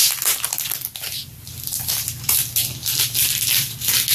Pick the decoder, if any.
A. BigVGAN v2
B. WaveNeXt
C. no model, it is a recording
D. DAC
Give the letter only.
C